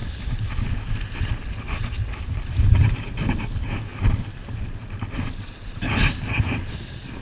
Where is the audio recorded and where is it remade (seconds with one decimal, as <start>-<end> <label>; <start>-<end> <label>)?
0.0-7.2 recorded